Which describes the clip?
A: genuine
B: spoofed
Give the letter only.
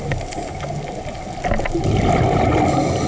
A